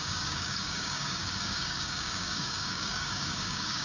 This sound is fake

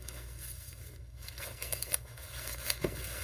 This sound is fake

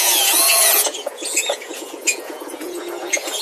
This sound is fake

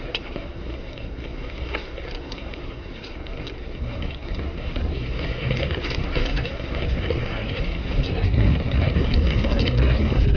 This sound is fake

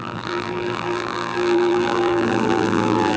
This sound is fake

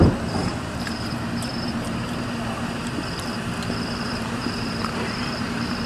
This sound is fake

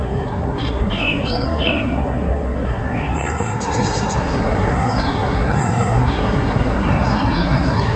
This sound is fake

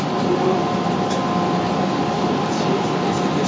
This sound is real